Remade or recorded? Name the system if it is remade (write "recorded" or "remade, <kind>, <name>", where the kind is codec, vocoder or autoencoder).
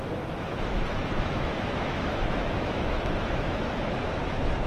remade, autoencoder, DAC-VAE